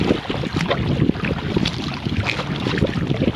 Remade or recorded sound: recorded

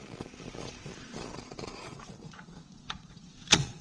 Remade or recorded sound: remade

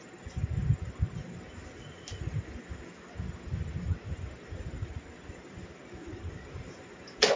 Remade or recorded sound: recorded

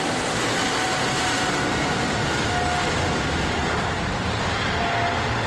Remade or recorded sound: recorded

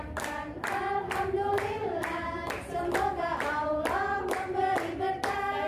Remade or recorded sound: recorded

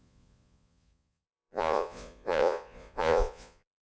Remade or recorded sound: remade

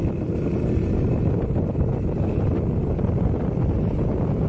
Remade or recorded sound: recorded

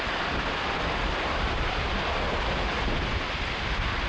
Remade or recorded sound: recorded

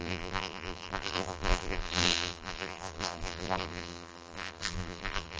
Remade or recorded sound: remade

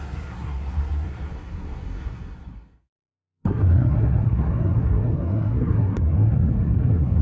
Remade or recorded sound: remade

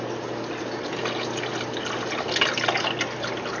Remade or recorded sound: recorded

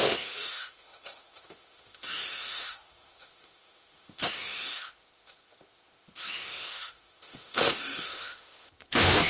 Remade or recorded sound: remade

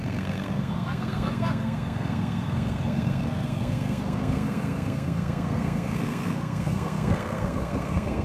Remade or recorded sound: remade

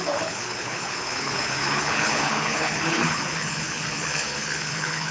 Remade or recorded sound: remade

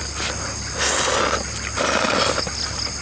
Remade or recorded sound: recorded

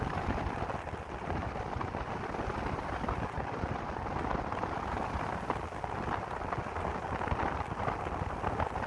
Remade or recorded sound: recorded